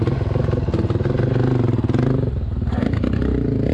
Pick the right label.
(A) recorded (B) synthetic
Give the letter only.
A